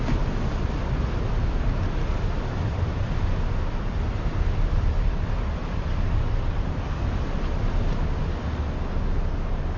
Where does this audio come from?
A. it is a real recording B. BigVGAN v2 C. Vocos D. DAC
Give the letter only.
A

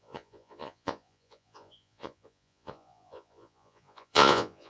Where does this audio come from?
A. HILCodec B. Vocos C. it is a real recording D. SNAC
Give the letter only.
B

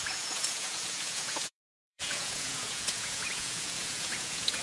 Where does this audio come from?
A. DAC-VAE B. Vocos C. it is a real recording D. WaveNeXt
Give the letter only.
B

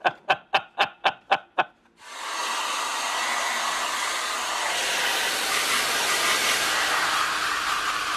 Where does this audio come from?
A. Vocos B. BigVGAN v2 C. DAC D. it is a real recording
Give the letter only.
D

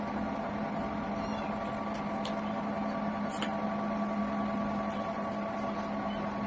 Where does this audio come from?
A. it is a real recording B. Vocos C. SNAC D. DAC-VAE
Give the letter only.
A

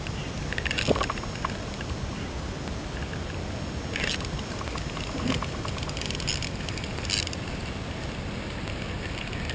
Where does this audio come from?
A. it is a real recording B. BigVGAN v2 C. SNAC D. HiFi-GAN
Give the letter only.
A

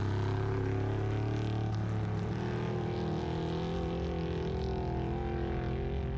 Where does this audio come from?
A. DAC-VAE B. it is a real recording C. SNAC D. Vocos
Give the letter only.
B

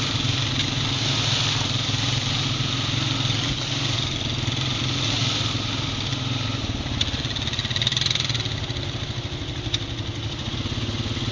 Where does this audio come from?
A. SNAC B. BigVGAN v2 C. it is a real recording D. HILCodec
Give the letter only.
C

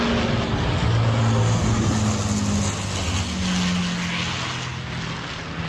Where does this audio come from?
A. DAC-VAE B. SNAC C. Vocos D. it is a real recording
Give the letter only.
D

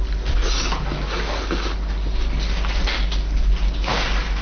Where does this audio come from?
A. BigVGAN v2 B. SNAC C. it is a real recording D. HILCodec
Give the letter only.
C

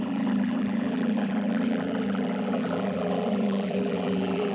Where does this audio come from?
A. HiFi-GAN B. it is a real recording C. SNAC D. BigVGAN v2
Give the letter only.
D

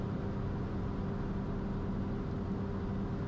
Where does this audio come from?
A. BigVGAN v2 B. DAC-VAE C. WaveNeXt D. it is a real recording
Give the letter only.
D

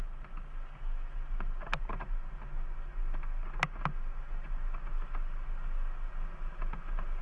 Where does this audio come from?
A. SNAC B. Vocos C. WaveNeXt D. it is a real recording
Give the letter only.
D